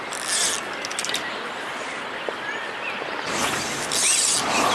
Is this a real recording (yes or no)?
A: yes